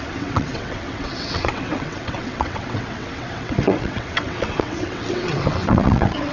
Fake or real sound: fake